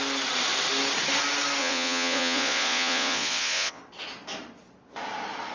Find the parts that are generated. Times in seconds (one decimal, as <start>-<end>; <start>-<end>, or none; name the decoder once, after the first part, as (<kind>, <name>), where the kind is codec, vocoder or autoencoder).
1.6-3.8 (vocoder, Vocos)